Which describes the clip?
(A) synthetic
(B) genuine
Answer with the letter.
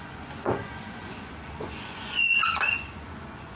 A